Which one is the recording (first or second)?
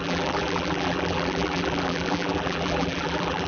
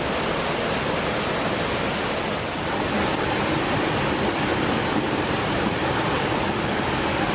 second